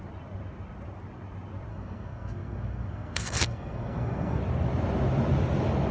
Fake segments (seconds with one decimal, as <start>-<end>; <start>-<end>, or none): 1.7-4.4